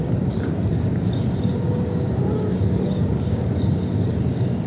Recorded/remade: remade